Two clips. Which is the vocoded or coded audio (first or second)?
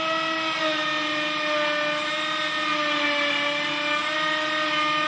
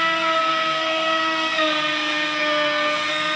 second